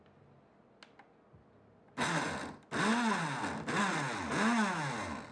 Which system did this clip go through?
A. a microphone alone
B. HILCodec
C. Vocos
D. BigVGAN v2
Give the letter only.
A